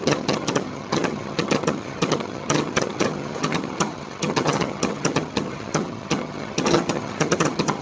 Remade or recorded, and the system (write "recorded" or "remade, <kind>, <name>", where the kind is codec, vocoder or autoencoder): remade, vocoder, HiFi-GAN